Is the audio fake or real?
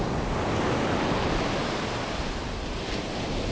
real